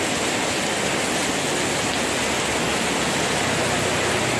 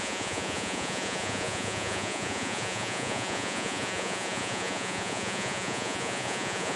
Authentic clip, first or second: first